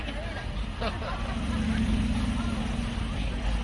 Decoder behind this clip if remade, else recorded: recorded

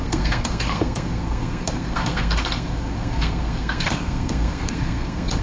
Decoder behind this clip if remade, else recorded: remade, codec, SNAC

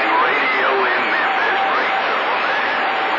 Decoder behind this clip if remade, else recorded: remade, vocoder, BigVGAN v2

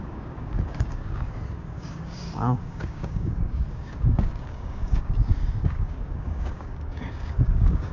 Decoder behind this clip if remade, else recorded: remade, codec, DAC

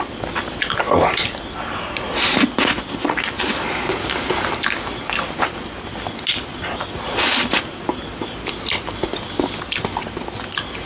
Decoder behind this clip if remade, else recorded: recorded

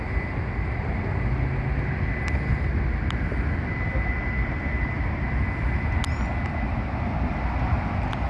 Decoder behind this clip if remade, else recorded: recorded